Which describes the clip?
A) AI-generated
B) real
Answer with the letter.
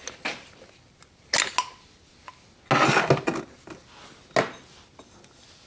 B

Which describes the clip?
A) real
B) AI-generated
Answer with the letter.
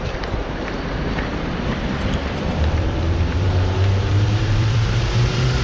B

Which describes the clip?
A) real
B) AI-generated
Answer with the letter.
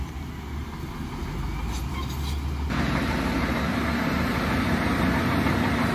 A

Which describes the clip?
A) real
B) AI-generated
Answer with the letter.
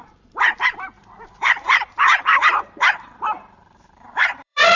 B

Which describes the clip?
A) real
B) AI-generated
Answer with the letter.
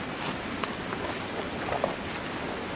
A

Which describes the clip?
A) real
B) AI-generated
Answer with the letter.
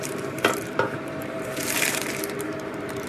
B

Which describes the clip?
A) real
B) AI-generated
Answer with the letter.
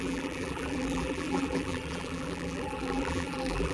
B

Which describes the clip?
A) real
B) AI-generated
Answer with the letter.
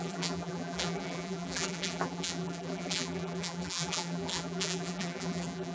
B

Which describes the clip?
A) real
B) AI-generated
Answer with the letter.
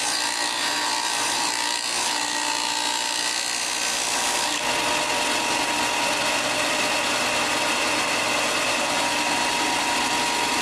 A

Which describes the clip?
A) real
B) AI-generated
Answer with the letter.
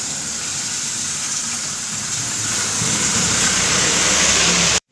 B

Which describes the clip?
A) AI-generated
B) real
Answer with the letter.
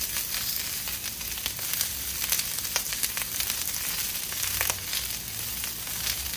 B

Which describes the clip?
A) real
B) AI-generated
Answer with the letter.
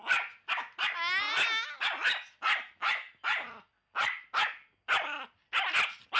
A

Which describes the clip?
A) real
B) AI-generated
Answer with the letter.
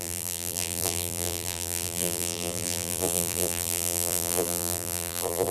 B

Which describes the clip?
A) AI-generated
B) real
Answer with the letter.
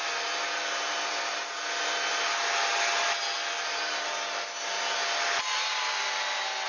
B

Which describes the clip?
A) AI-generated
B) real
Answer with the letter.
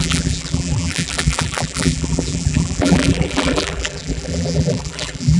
A